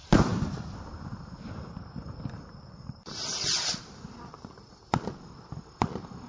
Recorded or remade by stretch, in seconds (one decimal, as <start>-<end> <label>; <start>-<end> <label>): 0.0-6.3 recorded